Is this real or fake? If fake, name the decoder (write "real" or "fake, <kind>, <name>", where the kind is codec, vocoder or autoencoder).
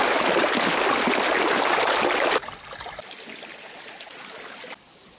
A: real